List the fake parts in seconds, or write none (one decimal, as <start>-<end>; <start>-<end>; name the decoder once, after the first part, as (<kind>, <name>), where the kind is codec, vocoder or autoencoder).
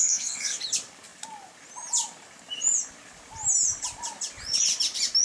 0.0-0.6 (codec, SNAC)